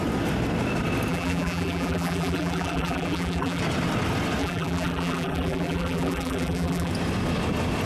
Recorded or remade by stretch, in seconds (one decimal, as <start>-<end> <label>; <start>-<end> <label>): 0.0-1.1 recorded; 1.1-3.6 remade; 3.6-4.4 recorded; 4.4-6.9 remade; 6.9-7.9 recorded